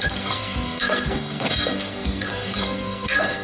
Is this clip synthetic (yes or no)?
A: yes